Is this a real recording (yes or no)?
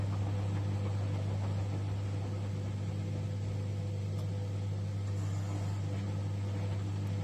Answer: yes